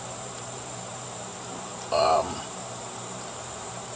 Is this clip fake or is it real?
fake